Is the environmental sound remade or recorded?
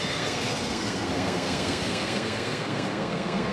remade